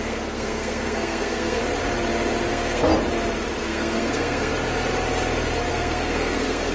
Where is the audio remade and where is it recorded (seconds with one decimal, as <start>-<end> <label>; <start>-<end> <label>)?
0.0-1.6 remade; 1.6-2.5 recorded; 2.5-2.9 remade; 2.9-3.6 recorded; 3.6-4.5 remade; 4.5-5.7 recorded; 5.7-6.7 remade